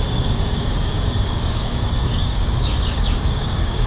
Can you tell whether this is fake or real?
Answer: fake